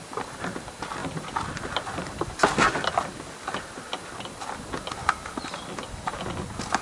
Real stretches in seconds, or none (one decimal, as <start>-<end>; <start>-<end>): 0.0-1.0; 3.7-6.8